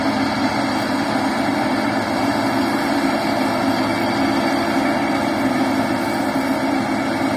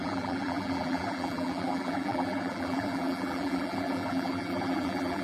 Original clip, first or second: first